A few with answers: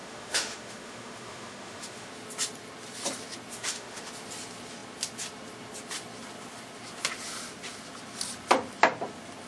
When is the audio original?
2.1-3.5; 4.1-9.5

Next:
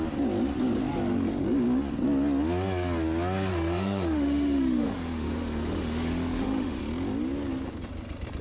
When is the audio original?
0.0-3.5; 6.8-8.4

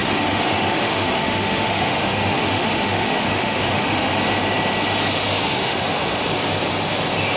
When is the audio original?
4.1-5.5; 6.2-7.4

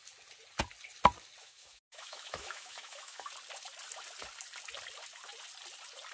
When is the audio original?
0.0-1.4; 3.3-6.1

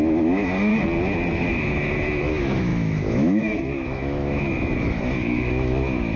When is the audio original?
0.7-1.4

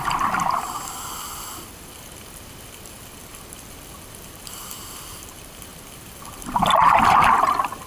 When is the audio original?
0.0-7.9